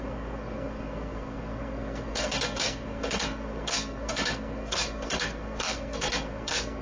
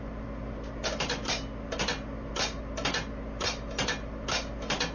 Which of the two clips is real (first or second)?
second